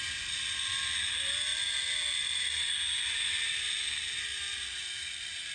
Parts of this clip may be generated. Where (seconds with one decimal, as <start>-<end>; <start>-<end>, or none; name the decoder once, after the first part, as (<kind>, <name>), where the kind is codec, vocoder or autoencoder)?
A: none